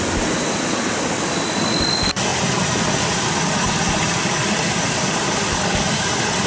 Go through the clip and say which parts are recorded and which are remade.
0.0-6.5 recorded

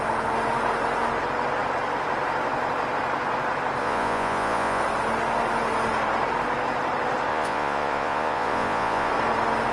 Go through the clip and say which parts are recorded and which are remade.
0.0-3.8 recorded; 3.8-4.8 remade; 4.8-7.3 recorded; 7.3-9.1 remade; 9.1-9.7 recorded